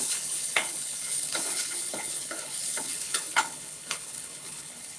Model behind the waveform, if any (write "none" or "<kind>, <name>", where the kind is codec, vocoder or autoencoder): codec, HILCodec